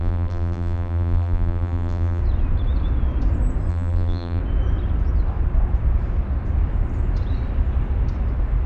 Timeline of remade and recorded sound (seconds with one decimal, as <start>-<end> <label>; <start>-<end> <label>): 0.0-2.2 remade; 2.2-3.7 recorded; 3.7-4.4 remade; 4.4-8.7 recorded